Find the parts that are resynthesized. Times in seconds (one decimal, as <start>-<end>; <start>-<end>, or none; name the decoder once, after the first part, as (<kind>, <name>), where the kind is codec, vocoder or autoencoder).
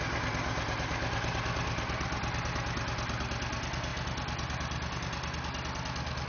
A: none